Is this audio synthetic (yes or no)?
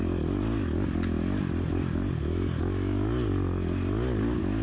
no